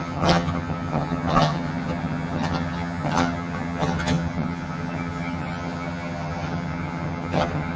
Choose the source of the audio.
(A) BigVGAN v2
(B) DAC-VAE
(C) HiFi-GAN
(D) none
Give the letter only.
C